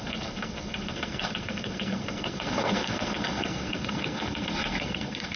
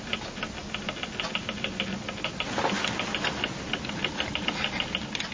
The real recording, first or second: second